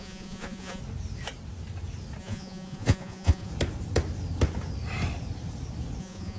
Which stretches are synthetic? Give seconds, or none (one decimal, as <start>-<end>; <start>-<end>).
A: 0.0-0.8; 2.2-3.5; 6.0-6.4